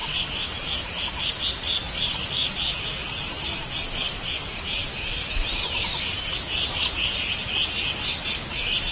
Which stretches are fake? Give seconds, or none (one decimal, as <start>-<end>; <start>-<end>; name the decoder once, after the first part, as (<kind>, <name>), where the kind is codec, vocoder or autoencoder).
0.0-7.3 (vocoder, BigVGAN v2); 8.5-8.9